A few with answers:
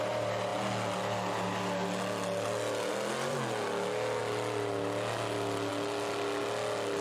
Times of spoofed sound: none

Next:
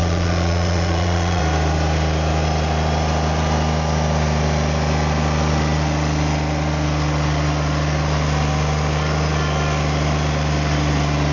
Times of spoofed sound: 0.0-1.4 (vocoder, Vocos)

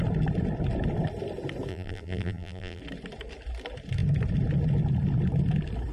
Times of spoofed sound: 1.7-2.8 (vocoder, BigVGAN v2)

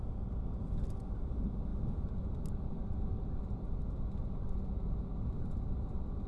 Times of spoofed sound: none

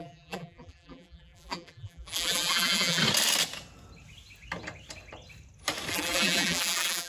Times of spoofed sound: 0.0-3.0 (vocoder, BigVGAN v2); 5.9-7.1

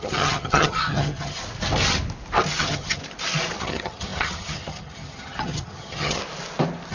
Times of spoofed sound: 0.0-1.4 (vocoder, HiFi-GAN); 2.6-3.0; 3.6-6.2